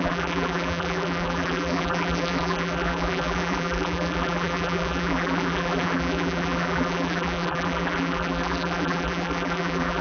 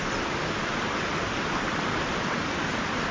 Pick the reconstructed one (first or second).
first